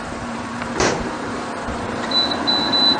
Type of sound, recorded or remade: remade